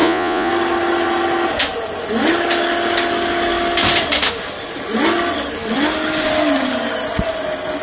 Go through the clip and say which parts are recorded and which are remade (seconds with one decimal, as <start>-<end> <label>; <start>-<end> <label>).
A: 0.0-0.5 remade; 0.5-7.8 recorded